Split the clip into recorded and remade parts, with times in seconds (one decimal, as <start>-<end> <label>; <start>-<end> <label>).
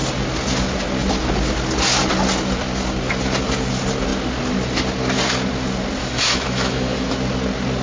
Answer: 0.0-6.0 recorded; 6.0-7.1 remade; 7.1-7.8 recorded